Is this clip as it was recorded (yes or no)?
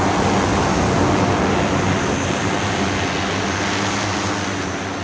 yes